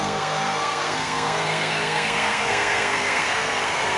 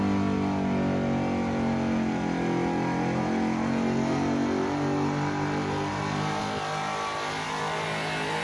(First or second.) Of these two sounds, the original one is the second